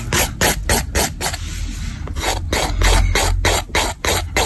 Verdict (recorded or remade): recorded